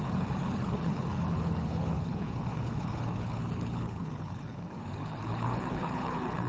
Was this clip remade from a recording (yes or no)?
yes